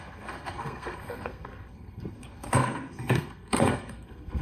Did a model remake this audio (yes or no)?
yes